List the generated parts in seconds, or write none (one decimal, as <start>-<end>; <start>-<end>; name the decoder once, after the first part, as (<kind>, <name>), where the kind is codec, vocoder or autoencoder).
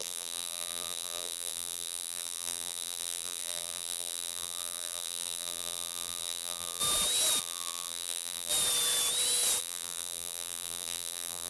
0.0-6.8 (vocoder, BigVGAN v2); 7.4-8.5; 9.6-11.5